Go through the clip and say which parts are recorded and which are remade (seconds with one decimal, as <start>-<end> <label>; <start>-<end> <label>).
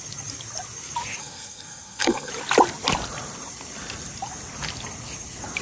0.0-1.2 recorded; 1.2-2.3 remade; 2.3-5.6 recorded